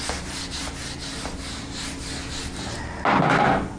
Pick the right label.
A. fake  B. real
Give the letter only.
B